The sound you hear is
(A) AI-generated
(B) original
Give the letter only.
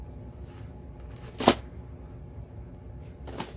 B